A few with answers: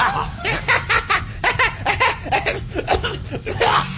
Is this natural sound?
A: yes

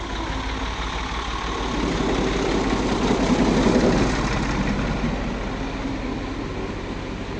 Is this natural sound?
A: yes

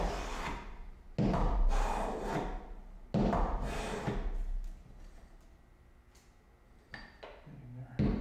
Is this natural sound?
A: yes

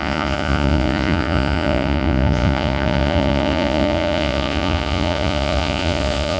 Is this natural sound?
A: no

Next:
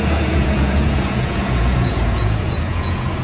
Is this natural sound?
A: no